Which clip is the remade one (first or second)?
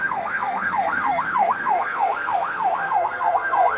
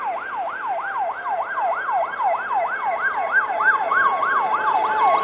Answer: first